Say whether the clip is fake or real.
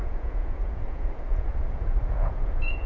fake